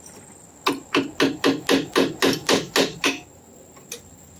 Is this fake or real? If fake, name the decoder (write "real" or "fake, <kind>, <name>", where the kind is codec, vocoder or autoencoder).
real